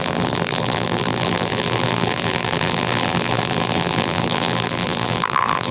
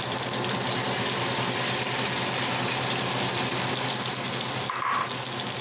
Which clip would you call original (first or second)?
second